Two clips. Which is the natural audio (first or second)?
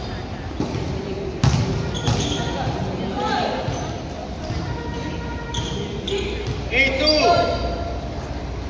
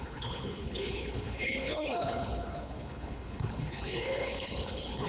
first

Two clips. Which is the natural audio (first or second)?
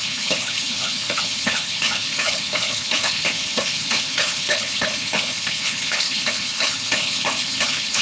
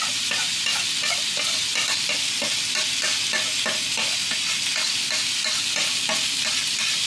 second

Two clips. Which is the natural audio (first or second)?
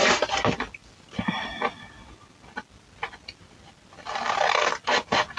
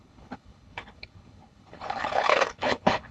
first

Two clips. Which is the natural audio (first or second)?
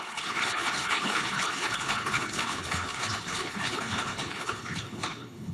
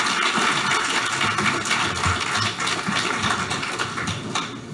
second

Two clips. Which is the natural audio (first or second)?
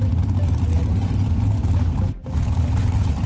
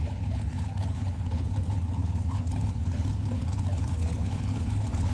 first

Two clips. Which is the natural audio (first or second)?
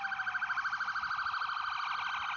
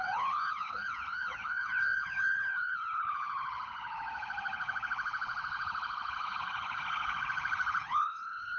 first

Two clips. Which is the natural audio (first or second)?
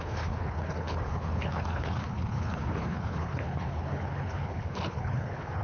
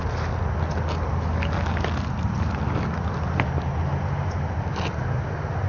second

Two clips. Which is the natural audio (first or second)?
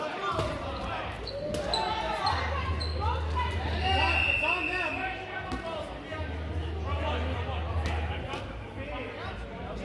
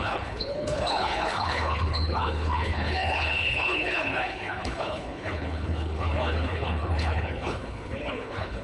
first